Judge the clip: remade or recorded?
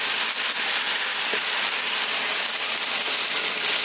recorded